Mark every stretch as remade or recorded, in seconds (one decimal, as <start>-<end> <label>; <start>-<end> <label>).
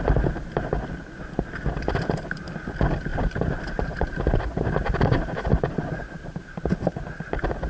0.0-3.1 recorded; 3.1-7.1 remade; 7.1-7.7 recorded